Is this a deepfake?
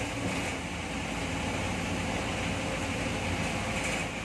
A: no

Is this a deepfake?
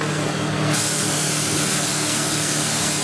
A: yes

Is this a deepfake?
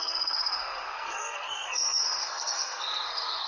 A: yes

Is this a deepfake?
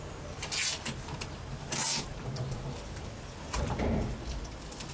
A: no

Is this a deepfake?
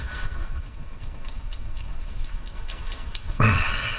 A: yes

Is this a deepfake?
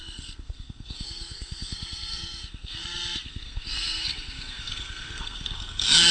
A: yes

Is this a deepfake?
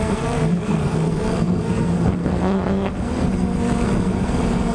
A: yes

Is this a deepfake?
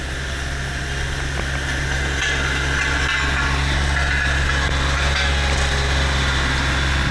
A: no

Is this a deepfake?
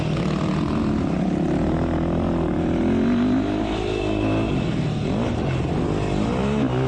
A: no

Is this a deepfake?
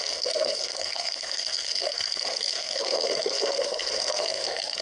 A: yes